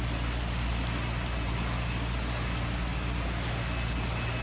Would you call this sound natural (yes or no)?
yes